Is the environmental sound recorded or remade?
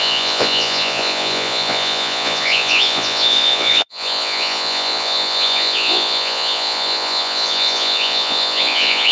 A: remade